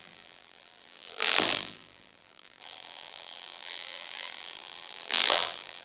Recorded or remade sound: remade